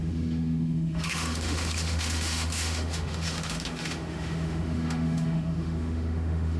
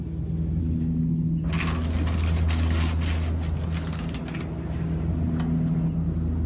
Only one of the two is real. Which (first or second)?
second